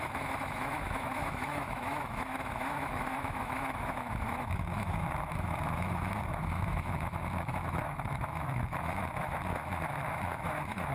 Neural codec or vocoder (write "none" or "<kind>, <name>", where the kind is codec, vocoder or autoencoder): autoencoder, DAC-VAE